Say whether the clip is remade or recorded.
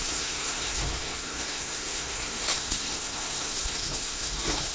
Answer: remade